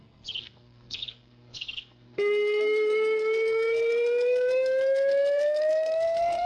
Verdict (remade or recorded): remade